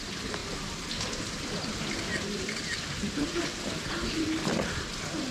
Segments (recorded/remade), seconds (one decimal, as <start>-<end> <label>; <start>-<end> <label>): 0.0-0.4 recorded; 0.4-3.6 remade; 3.6-5.3 recorded